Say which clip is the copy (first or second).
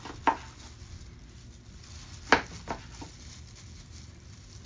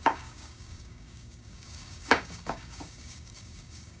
second